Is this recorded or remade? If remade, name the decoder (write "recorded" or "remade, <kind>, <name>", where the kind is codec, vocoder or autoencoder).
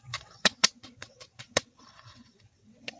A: remade, vocoder, WaveNeXt